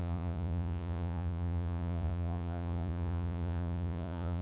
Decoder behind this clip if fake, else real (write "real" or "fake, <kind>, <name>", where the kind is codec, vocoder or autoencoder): fake, vocoder, Vocos